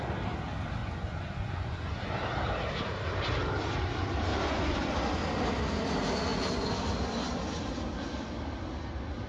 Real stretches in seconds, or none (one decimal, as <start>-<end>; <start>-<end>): 0.0-0.8; 2.2-4.3; 4.9-9.3